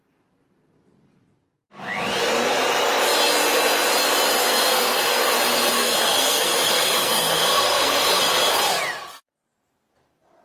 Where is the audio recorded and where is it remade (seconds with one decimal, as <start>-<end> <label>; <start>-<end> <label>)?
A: 0.0-4.4 recorded; 4.4-5.3 remade; 5.3-5.8 recorded; 5.8-8.2 remade; 8.2-10.4 recorded